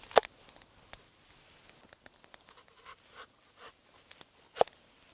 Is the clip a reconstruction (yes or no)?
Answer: no